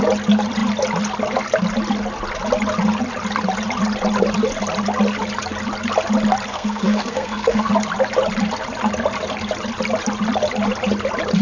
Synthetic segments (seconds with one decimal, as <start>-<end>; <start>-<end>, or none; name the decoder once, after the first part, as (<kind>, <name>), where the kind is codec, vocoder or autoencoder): 6.5-7.7 (codec, SNAC)

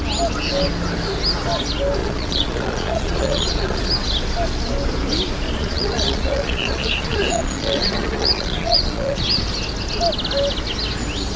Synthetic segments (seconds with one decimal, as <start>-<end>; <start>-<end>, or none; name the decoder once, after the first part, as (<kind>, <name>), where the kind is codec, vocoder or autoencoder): 2.0-3.9 (vocoder, Vocos); 5.6-9.2

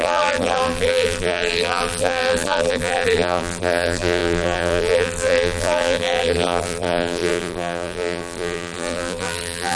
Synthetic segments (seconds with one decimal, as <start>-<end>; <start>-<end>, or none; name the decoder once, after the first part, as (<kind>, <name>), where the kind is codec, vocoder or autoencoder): 0.0-9.8 (vocoder, BigVGAN v2)

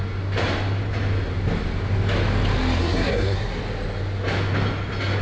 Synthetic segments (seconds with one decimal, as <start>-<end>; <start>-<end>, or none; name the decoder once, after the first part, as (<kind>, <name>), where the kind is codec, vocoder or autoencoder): 2.8-3.6 (codec, SNAC)

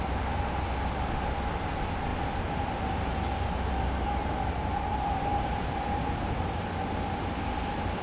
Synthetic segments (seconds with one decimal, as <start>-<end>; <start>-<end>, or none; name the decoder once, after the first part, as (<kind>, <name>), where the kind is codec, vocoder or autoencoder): none